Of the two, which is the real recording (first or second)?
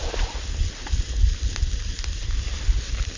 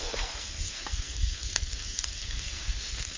first